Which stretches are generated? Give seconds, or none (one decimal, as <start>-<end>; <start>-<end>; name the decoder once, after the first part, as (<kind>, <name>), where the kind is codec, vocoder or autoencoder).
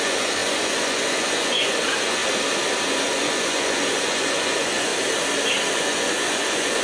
0.0-2.2 (vocoder, Vocos); 2.9-4.9; 5.7-6.8